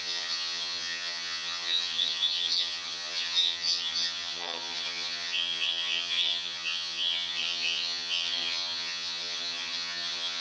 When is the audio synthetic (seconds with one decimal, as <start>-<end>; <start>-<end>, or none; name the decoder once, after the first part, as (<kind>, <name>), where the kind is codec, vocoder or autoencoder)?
0.0-10.4 (vocoder, HiFi-GAN)